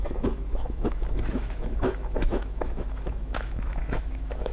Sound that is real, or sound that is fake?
fake